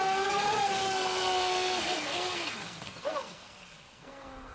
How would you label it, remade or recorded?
remade